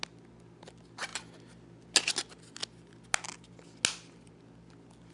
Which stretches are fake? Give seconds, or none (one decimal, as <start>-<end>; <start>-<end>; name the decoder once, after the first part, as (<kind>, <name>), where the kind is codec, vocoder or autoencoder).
none